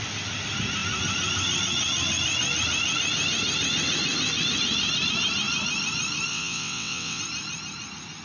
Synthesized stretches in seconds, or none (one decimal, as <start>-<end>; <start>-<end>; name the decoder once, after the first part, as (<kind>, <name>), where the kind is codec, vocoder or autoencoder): 6.3-7.2 (vocoder, WaveNeXt)